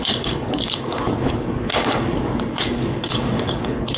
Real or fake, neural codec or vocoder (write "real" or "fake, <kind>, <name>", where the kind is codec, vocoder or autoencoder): fake, codec, DAC